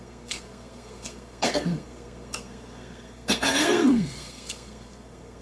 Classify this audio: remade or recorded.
remade